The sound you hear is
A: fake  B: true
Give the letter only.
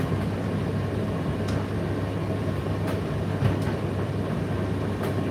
B